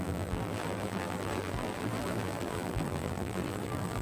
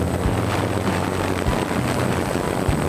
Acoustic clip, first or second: second